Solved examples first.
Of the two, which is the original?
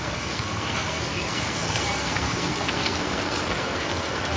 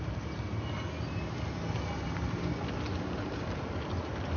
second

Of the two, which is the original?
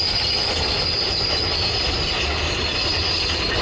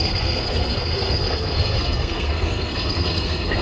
first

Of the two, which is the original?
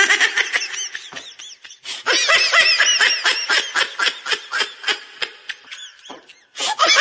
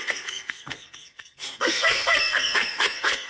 first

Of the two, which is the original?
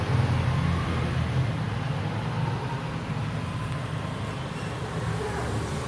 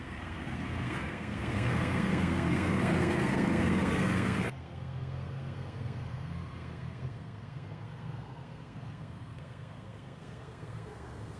first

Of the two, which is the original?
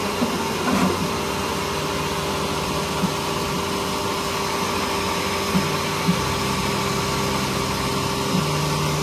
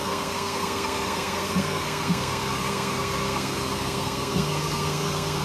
first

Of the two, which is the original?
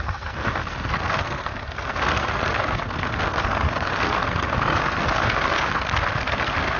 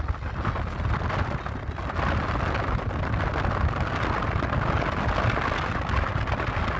second